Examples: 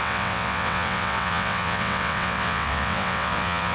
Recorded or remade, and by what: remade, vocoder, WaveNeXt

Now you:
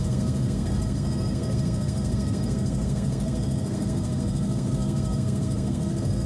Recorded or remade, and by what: remade, codec, SNAC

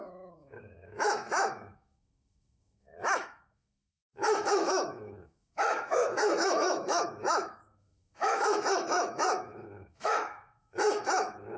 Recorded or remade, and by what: remade, autoencoder, DAC-VAE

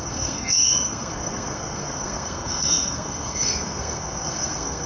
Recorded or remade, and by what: remade, codec, SNAC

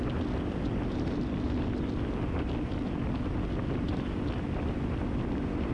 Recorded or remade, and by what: recorded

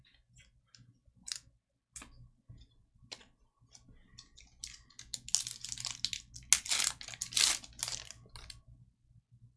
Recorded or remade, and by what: recorded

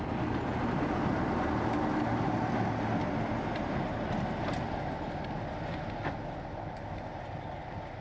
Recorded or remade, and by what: recorded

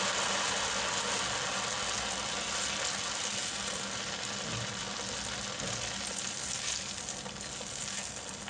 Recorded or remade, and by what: recorded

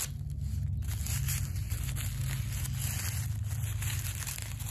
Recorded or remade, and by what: recorded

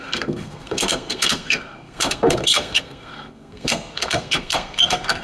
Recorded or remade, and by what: remade, codec, SNAC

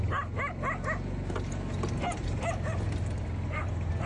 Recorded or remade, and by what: recorded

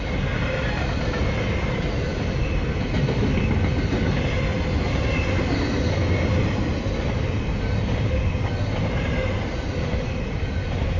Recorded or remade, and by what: recorded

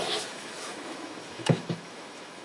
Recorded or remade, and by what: remade, autoencoder, DAC-VAE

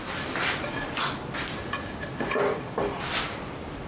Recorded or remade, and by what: recorded